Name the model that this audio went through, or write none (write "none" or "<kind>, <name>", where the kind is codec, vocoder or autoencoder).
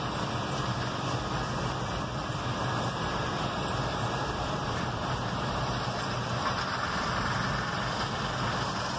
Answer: vocoder, BigVGAN v2